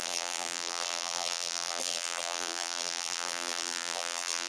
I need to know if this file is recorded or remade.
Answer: remade